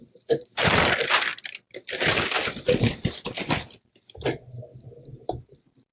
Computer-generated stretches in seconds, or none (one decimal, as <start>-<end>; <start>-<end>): 0.0-1.3; 3.0-5.9